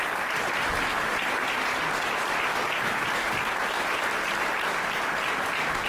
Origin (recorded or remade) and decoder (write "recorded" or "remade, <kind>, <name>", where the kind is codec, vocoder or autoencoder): recorded